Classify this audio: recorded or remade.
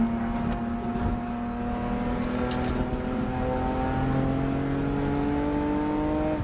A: recorded